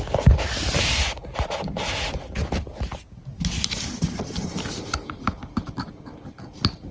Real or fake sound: real